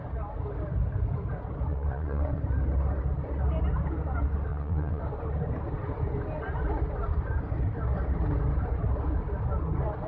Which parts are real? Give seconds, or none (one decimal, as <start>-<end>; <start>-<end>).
0.0-1.7; 2.4-4.5; 5.0-10.1